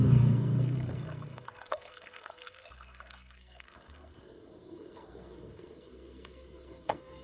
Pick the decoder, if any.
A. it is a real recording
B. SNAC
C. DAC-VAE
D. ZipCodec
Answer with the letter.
B